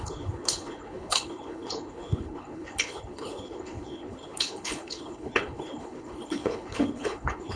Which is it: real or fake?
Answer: fake